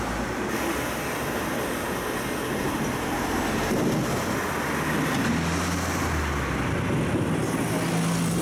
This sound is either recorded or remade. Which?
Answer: recorded